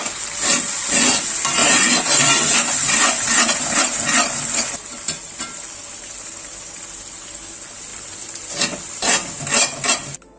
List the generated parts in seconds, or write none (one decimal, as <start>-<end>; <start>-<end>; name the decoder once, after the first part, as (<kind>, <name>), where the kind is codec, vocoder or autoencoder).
1.6-2.2 (vocoder, BigVGAN v2); 7.9-9.4